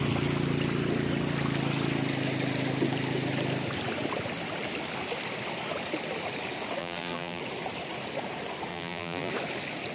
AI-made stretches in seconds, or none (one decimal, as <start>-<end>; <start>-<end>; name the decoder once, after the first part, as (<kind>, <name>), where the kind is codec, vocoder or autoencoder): 6.8-7.4 (vocoder, BigVGAN v2); 8.7-9.3